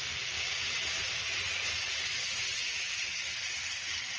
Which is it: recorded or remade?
recorded